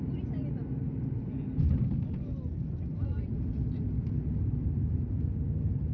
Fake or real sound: real